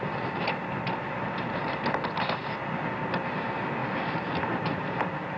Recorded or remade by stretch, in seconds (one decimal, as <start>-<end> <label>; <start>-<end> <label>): 0.0-5.4 recorded